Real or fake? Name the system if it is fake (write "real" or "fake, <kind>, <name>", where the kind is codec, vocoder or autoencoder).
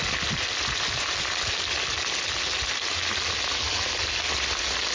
real